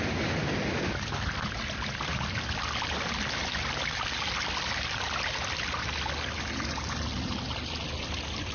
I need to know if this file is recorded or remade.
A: recorded